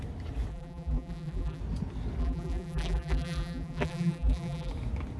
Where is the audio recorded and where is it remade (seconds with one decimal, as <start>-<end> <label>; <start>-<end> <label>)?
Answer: 0.0-0.5 recorded; 0.5-1.6 remade; 1.6-2.2 recorded; 2.2-4.7 remade; 4.7-5.2 recorded